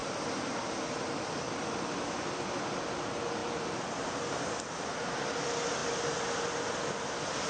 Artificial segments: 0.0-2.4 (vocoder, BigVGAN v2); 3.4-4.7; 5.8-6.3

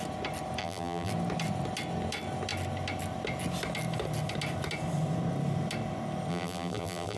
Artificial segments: 0.6-1.1 (vocoder, BigVGAN v2); 6.3-7.2

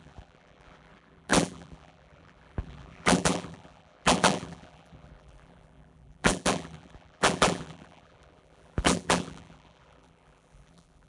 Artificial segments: 0.0-11.1 (vocoder, BigVGAN v2)

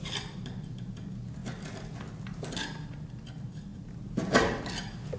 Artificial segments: 3.7-4.6 (vocoder, BigVGAN v2)